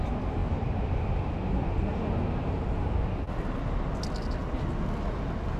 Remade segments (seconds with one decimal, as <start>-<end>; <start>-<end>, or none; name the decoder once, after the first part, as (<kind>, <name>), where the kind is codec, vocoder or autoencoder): none